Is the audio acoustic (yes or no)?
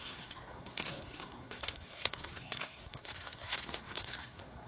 no